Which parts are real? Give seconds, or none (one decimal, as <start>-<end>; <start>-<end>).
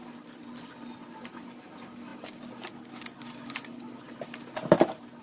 0.0-5.2